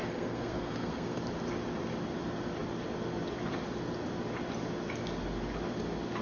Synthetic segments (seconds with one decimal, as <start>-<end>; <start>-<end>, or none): 0.0-1.2